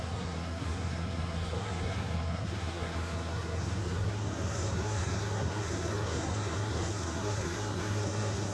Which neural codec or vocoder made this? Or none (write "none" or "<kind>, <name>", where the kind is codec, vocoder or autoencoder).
codec, SNAC